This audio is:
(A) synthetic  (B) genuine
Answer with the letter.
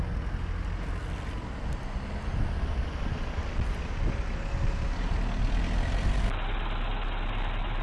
B